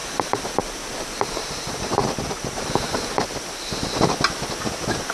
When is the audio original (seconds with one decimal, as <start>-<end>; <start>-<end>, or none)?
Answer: 0.0-5.1